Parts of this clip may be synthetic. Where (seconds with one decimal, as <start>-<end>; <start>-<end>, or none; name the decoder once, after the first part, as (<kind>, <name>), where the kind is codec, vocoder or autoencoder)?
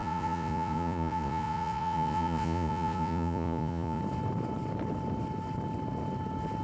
0.0-4.0 (vocoder, Vocos)